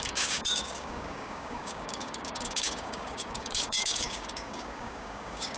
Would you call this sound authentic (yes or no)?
no